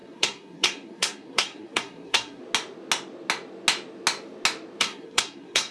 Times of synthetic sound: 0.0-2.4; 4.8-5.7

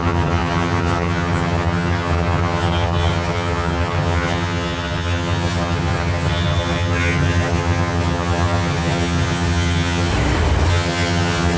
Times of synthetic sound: 0.0-10.1; 10.7-11.6

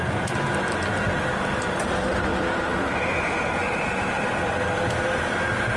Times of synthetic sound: none

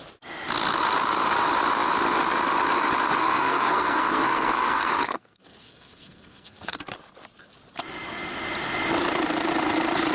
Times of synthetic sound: 3.2-6.8

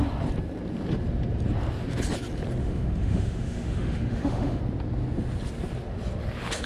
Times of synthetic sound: 2.6-4.6

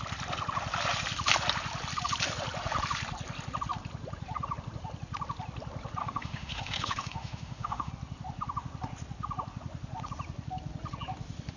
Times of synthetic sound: 6.0-7.9

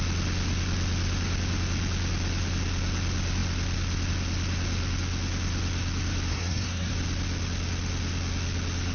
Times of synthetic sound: 6.3-6.9

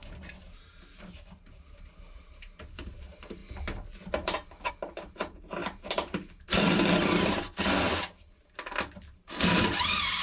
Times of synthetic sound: 0.0-3.4; 4.7-7.9; 9.1-10.2